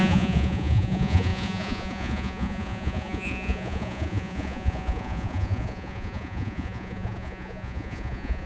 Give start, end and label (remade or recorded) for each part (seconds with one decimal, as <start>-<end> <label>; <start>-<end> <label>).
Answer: 0.0-8.5 remade